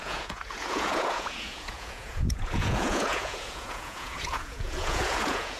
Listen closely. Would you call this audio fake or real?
fake